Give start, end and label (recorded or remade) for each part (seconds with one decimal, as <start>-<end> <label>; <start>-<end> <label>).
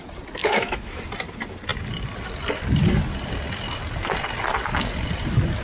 0.0-0.4 recorded; 0.4-1.0 remade; 1.0-5.6 recorded